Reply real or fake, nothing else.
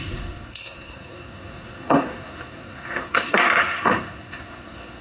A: fake